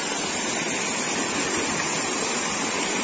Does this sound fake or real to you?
real